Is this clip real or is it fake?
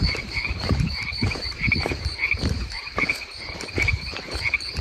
fake